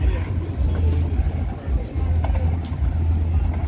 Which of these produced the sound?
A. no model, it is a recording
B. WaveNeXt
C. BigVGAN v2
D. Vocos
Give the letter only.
A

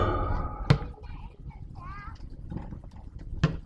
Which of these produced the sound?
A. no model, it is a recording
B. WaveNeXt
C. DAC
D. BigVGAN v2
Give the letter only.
A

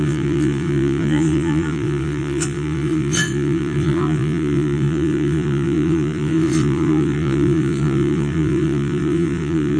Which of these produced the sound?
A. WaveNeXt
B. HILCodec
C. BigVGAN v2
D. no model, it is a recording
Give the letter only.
A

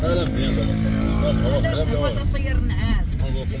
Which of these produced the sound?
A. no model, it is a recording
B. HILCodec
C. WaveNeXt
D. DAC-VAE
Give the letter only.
A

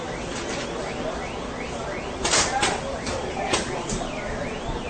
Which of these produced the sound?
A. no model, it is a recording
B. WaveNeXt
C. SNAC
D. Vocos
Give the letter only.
A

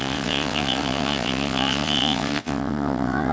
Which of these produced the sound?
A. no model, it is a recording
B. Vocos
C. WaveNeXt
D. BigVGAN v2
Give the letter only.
C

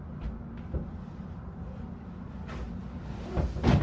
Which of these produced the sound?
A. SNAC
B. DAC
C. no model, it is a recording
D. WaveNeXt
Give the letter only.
C